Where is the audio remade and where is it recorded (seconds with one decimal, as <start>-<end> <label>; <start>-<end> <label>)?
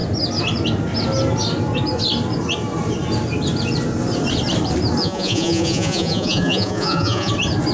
0.0-5.0 recorded; 5.0-7.3 remade; 7.3-7.7 recorded